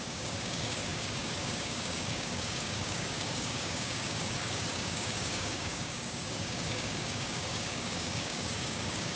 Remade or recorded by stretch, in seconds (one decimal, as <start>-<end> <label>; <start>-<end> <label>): 0.0-9.2 remade